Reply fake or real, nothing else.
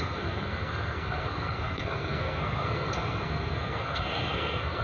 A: fake